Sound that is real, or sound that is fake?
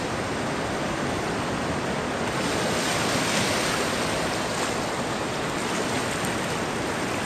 real